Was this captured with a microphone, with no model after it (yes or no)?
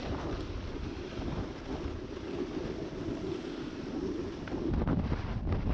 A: yes